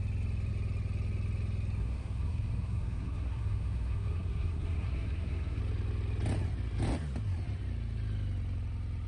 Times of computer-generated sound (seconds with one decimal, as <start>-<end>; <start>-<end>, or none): 1.8-5.6